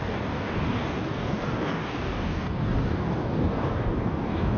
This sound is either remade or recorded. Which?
remade